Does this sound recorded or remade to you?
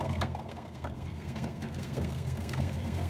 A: remade